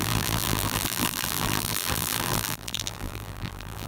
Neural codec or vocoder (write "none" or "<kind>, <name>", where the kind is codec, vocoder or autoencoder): vocoder, BigVGAN v2